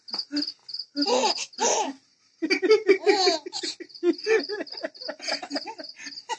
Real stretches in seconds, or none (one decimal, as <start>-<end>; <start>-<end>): 0.0-6.4